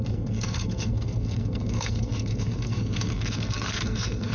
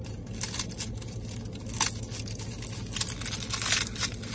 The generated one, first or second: first